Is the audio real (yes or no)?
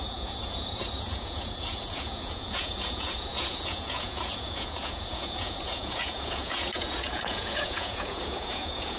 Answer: no